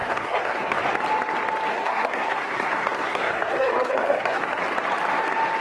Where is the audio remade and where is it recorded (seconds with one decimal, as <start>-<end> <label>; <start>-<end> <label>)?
0.0-0.8 remade; 0.8-1.7 recorded; 1.7-4.6 remade; 4.6-5.6 recorded